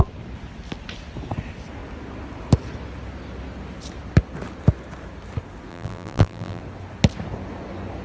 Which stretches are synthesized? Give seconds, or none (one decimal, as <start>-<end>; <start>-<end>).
5.7-6.6